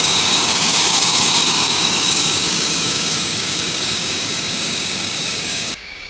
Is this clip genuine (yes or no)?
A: no